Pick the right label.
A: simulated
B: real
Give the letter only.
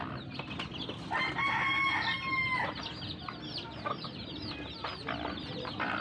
B